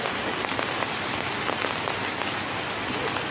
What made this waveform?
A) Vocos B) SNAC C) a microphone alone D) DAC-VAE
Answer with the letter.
C